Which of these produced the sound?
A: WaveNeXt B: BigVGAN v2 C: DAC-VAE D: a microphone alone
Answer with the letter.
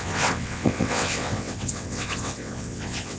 A